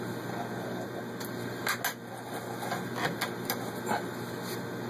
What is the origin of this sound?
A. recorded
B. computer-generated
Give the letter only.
A